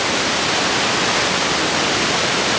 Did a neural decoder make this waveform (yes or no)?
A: no